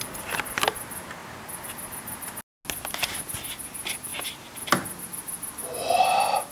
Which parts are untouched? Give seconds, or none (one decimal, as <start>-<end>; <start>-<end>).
0.0-6.5